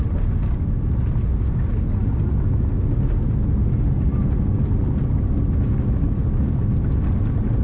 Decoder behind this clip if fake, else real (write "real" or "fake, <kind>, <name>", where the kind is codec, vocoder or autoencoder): real